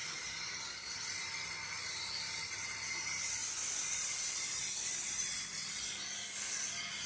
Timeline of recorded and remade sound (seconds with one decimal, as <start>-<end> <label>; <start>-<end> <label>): 0.0-7.1 recorded